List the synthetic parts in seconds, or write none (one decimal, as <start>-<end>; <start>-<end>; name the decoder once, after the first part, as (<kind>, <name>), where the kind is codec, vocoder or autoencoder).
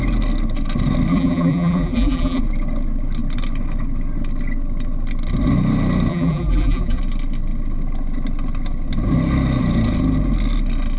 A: 1.1-2.4 (vocoder, BigVGAN v2); 6.1-7.0